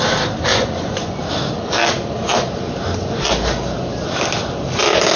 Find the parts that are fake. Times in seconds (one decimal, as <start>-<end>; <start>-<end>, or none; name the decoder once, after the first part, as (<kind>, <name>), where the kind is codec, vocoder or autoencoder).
0.5-1.2 (vocoder, Vocos)